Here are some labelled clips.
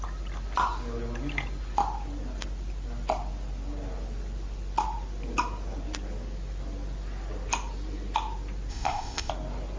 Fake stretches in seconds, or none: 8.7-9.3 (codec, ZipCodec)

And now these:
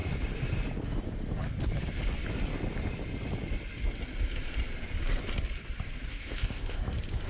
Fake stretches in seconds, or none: 6.1-6.8 (codec, ZipCodec)

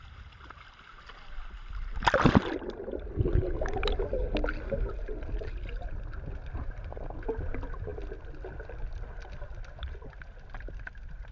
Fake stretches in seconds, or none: none

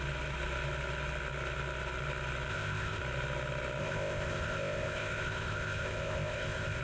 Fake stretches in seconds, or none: 2.5-3.0 (codec, ZipCodec); 3.8-6.8

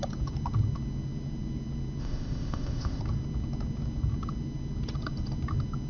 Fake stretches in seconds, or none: 2.0-3.0 (codec, ZipCodec)

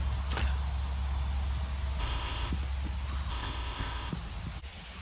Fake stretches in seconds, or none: 2.0-2.5 (codec, ZipCodec); 3.3-4.1

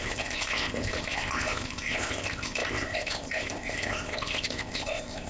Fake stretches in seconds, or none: 0.0-5.3 (codec, ZipCodec)